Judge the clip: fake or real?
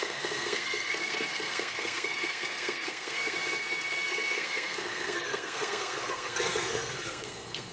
fake